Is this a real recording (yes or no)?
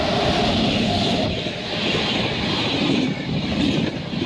no